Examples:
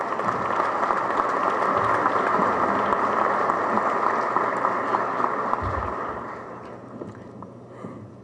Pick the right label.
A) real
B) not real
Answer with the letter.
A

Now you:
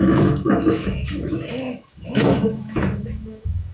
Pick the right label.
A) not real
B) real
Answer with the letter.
A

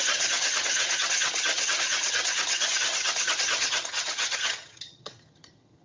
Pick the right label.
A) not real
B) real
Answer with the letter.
A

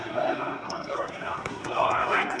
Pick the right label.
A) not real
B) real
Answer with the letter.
A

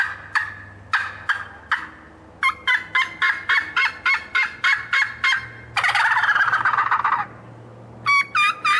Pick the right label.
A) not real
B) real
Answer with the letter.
B